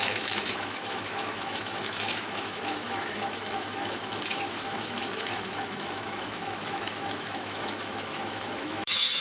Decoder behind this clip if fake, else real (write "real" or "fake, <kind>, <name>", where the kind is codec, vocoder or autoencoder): fake, autoencoder, DAC-VAE